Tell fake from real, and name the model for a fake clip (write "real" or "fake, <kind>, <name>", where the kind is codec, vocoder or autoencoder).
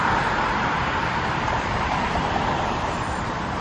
fake, vocoder, BigVGAN v2